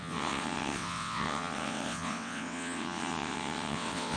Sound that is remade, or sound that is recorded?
remade